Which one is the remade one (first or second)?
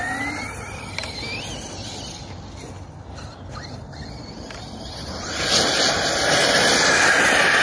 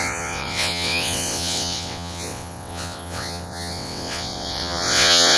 second